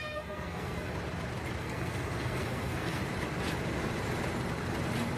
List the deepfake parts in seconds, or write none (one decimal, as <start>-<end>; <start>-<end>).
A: 0.0-0.9; 1.6-3.0